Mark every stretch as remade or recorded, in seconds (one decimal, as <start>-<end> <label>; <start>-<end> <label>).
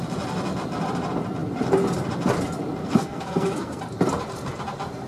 0.0-2.8 recorded; 2.8-3.8 remade; 3.8-5.1 recorded